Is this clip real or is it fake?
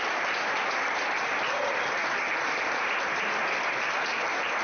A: real